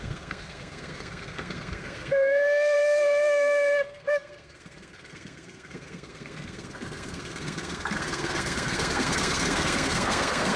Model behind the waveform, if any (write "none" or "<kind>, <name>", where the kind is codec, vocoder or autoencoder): codec, SNAC